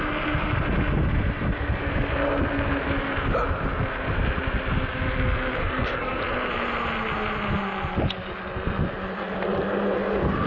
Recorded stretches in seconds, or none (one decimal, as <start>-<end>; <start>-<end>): 0.0-5.6; 6.2-10.5